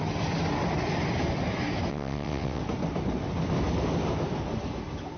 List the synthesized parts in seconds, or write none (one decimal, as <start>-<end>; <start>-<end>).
1.9-2.6